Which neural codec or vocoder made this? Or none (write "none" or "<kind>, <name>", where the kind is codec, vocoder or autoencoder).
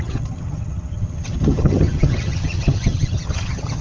vocoder, HiFi-GAN